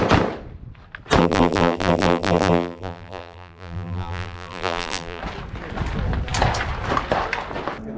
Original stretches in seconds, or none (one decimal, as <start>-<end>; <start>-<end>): 0.0-1.2; 5.2-8.0